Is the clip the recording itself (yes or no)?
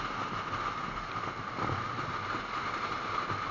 yes